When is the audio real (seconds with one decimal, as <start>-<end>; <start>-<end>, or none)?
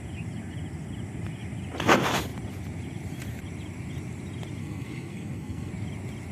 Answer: 0.0-4.6; 5.7-6.3